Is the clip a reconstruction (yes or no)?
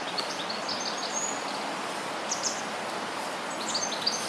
no